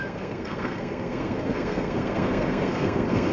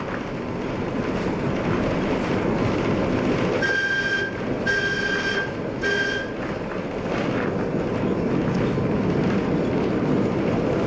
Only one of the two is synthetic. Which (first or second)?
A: first